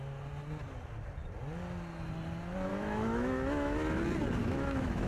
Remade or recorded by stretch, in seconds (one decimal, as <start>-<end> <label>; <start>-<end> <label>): 0.0-2.7 recorded; 2.7-4.0 remade; 4.0-4.4 recorded; 4.4-5.1 remade